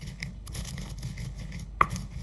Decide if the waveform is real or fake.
fake